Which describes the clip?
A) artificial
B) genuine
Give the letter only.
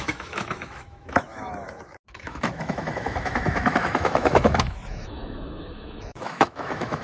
A